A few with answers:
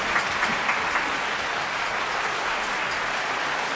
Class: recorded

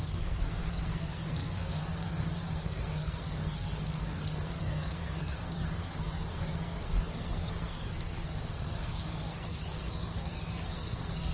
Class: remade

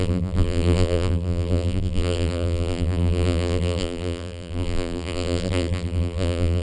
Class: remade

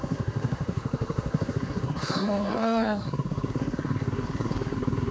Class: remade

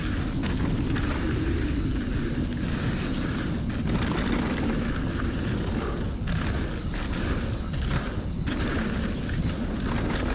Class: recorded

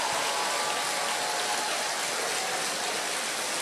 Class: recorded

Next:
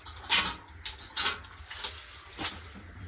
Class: recorded